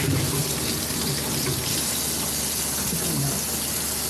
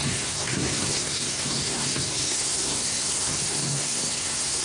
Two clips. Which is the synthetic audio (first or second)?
second